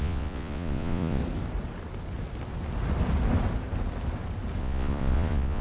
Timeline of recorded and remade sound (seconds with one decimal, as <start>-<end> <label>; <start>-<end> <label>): 0.0-1.2 remade; 1.2-4.6 recorded; 4.6-5.6 remade